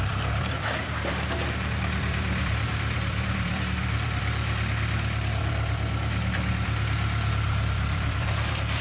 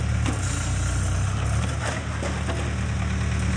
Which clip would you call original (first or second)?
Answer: second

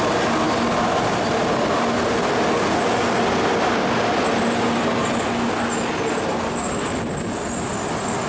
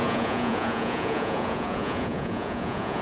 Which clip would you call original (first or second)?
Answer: first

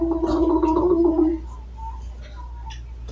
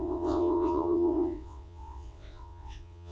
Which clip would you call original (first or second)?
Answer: first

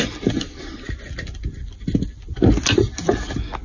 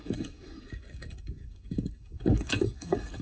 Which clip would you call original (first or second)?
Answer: first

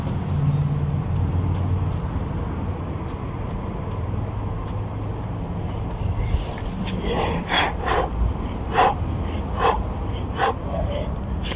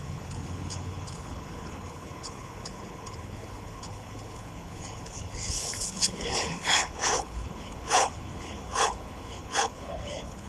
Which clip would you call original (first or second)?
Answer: first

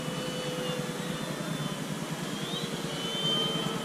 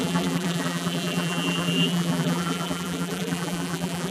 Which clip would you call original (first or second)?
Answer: first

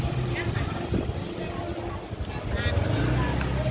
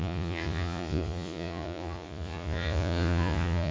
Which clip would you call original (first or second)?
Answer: first